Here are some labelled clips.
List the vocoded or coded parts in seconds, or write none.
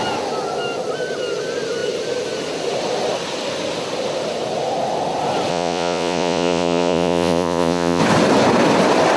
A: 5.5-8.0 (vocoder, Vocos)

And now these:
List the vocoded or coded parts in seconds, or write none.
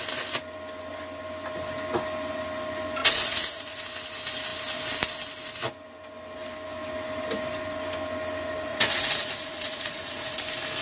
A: 3.0-3.8 (vocoder, Vocos); 8.7-10.4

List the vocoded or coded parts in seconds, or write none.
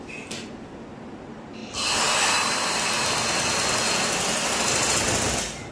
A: none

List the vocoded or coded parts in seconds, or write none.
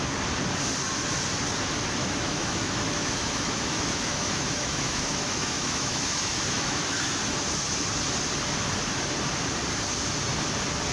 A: 2.0-7.2 (autoencoder, DAC-VAE)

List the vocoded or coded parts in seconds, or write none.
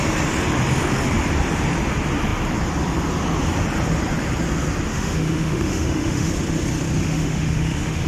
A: 4.9-6.3 (autoencoder, DAC-VAE); 7.0-8.1